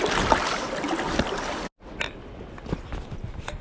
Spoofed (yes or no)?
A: no